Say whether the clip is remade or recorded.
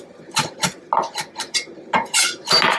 recorded